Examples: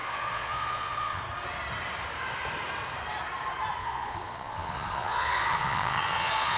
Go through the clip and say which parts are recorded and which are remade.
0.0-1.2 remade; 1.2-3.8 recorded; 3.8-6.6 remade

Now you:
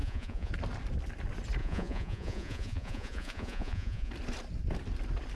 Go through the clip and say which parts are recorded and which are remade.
0.0-0.5 remade; 0.5-1.6 recorded; 1.6-4.1 remade; 4.1-5.4 recorded

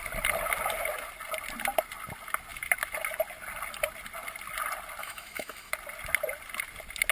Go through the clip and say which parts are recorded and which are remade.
0.0-5.0 recorded; 5.0-5.7 remade; 5.7-7.1 recorded

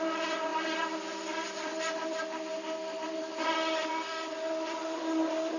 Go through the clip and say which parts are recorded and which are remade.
0.0-5.6 recorded